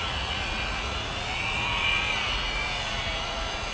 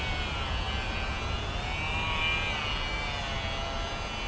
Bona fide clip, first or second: second